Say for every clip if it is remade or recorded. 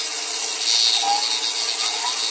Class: recorded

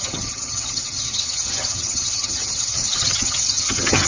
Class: remade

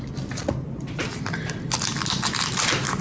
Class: recorded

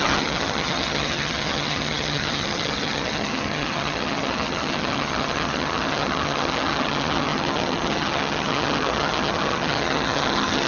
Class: remade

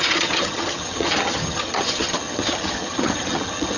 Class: remade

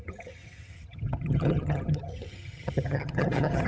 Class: remade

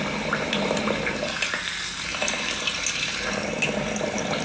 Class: recorded